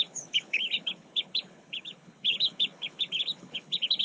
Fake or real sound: fake